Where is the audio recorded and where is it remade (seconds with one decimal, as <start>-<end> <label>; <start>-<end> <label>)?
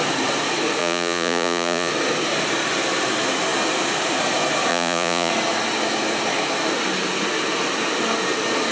0.0-0.8 recorded; 0.8-1.9 remade; 1.9-4.7 recorded; 4.7-5.3 remade; 5.3-8.7 recorded